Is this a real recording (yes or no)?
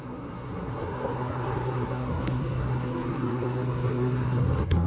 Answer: no